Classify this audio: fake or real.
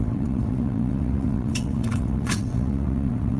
fake